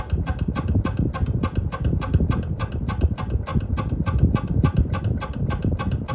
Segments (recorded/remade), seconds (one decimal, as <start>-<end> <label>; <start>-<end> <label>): 0.0-6.1 recorded